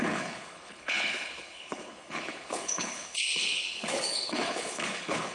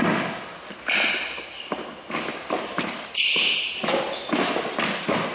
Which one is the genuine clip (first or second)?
second